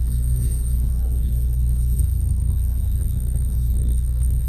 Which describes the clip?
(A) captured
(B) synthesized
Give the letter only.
B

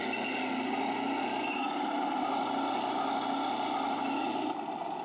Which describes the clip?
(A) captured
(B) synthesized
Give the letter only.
A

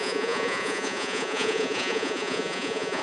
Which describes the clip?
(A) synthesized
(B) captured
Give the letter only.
A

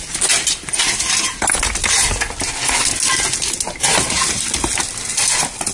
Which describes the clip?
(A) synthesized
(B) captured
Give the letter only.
B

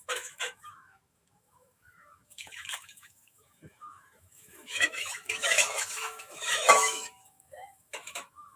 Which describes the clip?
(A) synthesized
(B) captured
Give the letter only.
A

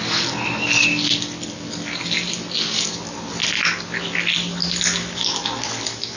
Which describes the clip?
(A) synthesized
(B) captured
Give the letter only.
B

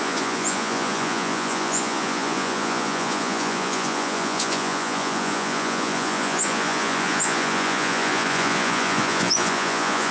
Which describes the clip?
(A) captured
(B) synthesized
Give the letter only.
B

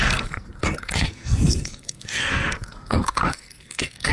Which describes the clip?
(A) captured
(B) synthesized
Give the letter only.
B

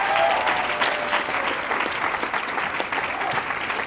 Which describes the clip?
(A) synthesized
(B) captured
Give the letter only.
B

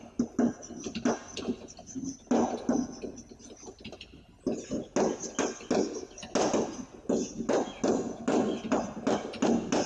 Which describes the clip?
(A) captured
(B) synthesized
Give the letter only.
A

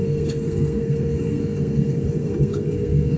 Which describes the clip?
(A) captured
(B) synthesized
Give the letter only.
B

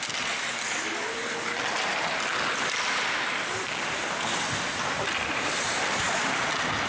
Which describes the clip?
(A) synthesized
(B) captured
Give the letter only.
B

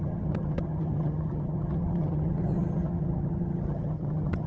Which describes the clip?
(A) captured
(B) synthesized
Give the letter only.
B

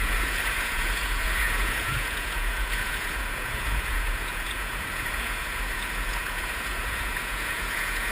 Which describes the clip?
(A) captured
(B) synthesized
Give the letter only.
B